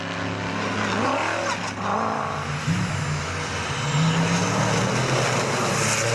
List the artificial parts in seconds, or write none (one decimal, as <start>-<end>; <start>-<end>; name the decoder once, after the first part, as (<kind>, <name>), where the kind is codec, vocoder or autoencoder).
2.6-3.3 (autoencoder, DAC-VAE)